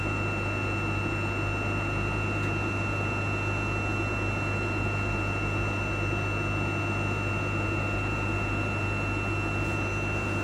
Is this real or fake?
real